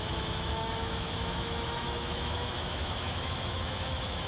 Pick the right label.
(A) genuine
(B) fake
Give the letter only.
B